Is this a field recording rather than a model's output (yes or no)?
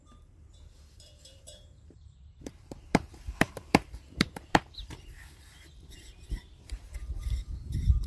no